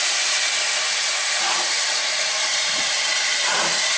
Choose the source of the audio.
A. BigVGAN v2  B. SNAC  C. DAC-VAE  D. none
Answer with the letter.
A